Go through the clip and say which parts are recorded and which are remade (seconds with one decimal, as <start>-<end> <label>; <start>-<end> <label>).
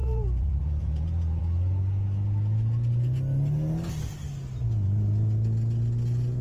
0.0-1.4 remade; 1.4-6.4 recorded